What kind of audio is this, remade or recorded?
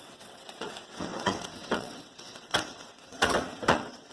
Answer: remade